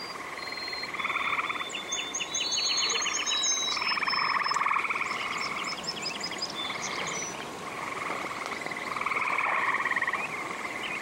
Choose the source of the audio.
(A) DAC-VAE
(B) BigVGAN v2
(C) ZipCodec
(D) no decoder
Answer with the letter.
B